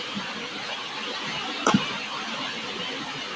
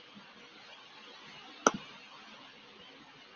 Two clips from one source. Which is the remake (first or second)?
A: first